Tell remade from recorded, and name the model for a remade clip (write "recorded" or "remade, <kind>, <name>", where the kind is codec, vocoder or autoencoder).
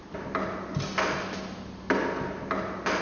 recorded